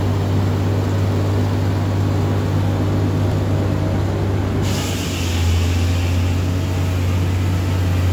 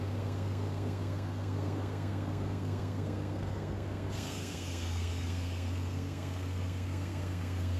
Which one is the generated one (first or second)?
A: second